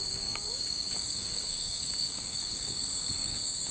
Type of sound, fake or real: fake